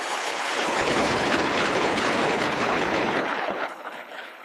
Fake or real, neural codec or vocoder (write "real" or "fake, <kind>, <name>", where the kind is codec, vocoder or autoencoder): fake, codec, HILCodec